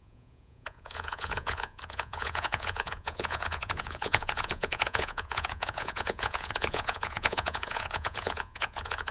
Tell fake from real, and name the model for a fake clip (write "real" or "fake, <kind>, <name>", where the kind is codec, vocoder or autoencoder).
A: fake, vocoder, Vocos